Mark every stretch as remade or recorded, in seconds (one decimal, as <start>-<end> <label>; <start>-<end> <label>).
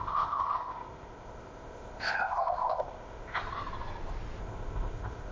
0.0-3.4 remade; 3.4-4.4 recorded; 4.4-5.3 remade